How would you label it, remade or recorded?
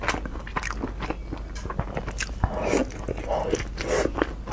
recorded